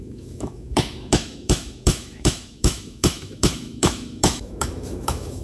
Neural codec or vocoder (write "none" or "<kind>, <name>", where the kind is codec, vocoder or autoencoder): autoencoder, DAC-VAE